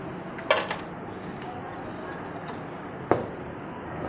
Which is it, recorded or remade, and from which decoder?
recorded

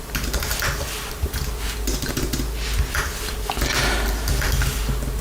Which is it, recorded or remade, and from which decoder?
recorded